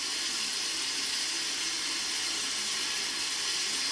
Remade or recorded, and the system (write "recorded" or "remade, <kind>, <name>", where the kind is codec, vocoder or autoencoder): recorded